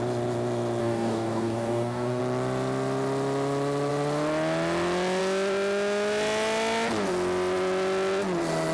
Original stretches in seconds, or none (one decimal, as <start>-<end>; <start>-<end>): 0.0-0.8; 2.2-8.7